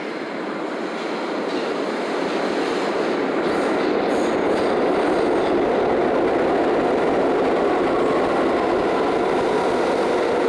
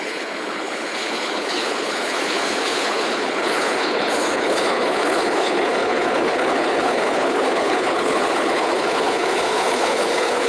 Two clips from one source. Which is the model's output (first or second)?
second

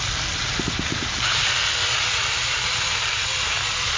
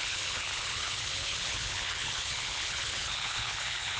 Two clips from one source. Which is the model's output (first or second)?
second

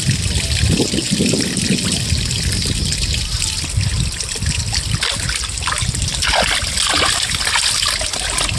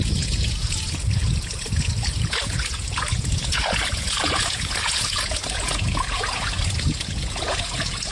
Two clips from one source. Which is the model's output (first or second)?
second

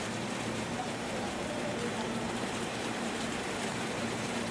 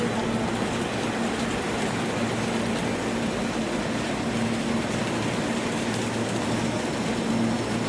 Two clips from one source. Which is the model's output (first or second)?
first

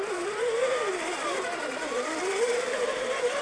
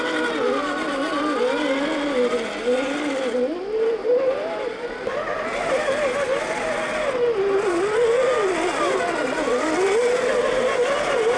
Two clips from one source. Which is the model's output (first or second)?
first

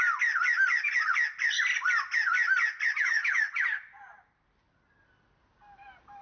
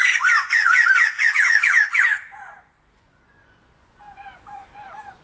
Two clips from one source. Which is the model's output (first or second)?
second